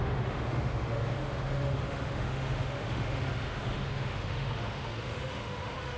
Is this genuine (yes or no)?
no